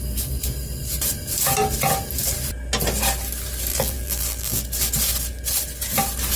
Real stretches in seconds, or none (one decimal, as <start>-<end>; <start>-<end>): 0.0-3.7; 4.6-6.4